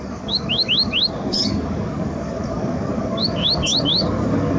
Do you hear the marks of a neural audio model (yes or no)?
yes